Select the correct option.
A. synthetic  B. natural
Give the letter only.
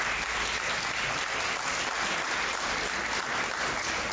B